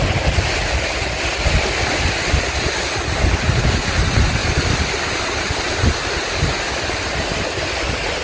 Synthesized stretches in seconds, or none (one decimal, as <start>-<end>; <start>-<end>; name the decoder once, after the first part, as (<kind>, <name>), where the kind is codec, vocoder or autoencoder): none